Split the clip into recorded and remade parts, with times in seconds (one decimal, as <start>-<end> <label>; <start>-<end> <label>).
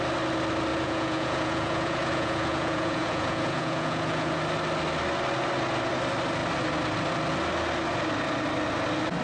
0.0-0.7 recorded; 0.7-4.4 remade; 4.4-9.2 recorded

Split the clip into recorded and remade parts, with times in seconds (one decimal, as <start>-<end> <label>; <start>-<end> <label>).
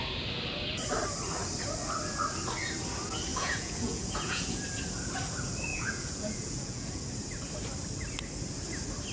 0.0-3.3 recorded; 3.3-4.6 remade; 4.6-5.7 recorded; 5.7-7.0 remade; 7.0-9.1 recorded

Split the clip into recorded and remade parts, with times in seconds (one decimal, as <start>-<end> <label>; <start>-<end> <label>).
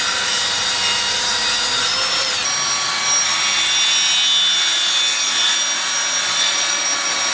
0.0-7.3 recorded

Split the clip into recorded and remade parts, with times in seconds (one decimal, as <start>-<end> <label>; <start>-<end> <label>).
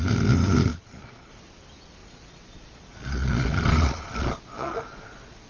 0.0-0.7 recorded; 0.7-1.3 remade; 1.3-2.0 recorded; 2.0-5.5 remade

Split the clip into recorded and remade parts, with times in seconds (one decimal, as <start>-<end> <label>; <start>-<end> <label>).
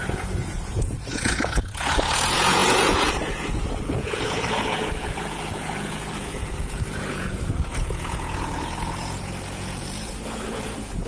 0.0-11.1 remade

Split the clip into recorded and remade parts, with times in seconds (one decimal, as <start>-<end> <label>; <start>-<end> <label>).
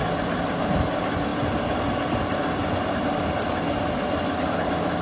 0.0-5.0 recorded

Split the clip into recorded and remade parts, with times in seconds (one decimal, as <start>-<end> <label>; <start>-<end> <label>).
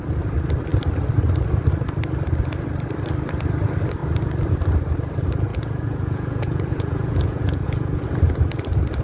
0.0-5.5 recorded; 5.5-8.0 remade; 8.0-9.0 recorded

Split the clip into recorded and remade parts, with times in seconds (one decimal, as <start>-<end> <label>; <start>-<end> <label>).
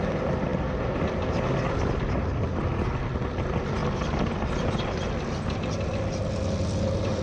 0.0-7.2 recorded